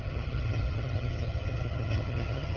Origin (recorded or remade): remade